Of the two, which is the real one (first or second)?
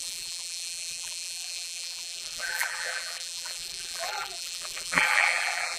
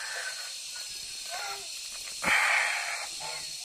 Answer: second